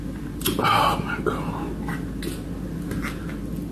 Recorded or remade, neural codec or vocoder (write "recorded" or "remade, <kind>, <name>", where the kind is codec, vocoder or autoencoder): recorded